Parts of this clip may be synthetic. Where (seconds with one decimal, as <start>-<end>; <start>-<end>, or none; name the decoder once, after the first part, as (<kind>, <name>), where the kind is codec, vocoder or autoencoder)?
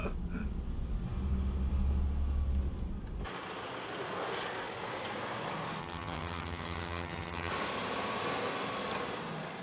5.8-7.5 (vocoder, HiFi-GAN)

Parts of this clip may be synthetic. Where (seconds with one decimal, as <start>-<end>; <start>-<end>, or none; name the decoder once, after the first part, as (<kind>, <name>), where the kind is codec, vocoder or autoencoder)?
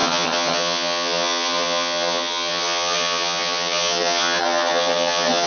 0.0-5.5 (vocoder, HiFi-GAN)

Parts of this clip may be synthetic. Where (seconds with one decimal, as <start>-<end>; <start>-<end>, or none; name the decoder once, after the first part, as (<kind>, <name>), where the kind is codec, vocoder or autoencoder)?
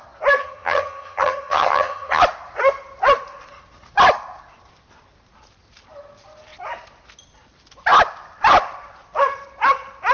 0.4-2.2 (vocoder, HiFi-GAN)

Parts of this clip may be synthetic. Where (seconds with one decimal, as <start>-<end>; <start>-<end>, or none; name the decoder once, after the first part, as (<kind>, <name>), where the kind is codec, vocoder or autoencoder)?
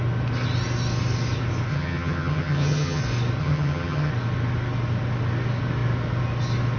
1.7-3.0 (vocoder, HiFi-GAN); 3.4-4.1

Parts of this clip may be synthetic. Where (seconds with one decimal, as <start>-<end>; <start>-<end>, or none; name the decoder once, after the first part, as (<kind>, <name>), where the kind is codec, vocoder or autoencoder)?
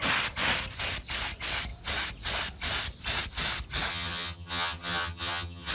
3.9-5.7 (vocoder, HiFi-GAN)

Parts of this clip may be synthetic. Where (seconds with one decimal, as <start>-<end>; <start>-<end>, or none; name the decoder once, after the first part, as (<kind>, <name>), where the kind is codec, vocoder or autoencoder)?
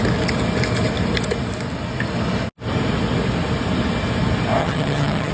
4.6-5.3 (vocoder, HiFi-GAN)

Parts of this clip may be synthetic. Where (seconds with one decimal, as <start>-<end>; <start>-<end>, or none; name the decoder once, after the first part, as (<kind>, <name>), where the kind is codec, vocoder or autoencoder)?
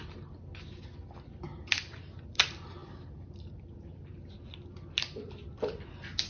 none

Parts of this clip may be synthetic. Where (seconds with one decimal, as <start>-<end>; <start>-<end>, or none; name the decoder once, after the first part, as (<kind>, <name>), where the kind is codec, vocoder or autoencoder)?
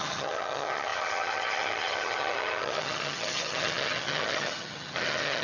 0.0-5.4 (vocoder, HiFi-GAN)